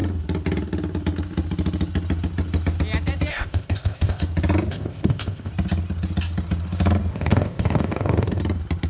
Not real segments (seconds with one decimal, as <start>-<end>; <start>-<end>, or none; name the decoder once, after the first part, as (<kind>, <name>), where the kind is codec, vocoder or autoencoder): 3.3-4.2 (codec, ZipCodec); 4.7-5.5; 7.1-8.4